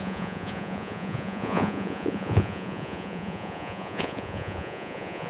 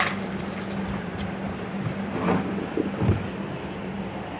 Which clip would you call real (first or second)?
second